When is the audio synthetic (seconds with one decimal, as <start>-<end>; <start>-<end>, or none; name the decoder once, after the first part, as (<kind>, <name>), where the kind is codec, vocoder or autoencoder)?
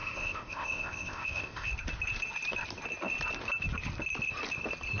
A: 0.0-1.7 (codec, ZipCodec)